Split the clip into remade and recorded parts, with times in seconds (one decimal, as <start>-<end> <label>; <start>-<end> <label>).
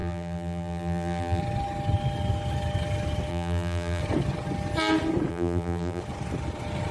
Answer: 0.0-1.4 remade; 1.4-3.3 recorded; 3.3-4.0 remade; 4.0-5.3 recorded; 5.3-6.0 remade; 6.0-6.9 recorded